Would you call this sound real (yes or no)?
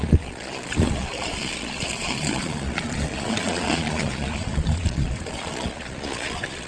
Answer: no